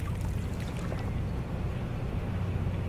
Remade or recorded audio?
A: recorded